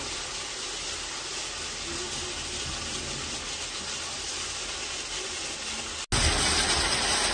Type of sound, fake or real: real